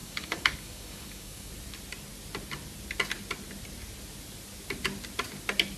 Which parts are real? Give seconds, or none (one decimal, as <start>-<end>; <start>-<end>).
1.5-5.8